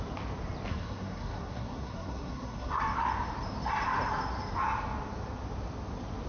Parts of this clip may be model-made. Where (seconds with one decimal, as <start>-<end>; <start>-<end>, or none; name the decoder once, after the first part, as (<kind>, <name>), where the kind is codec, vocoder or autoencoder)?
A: 0.7-2.8 (codec, SNAC)